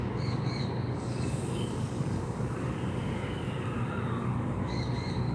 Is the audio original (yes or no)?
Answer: no